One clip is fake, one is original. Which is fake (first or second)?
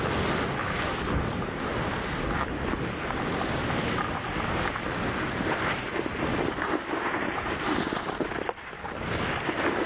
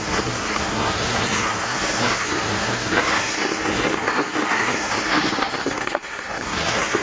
second